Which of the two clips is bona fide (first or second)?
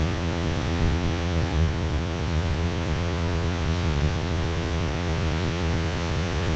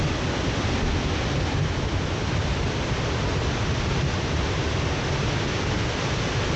second